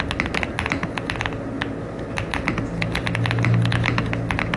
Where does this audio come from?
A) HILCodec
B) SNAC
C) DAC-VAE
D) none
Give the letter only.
D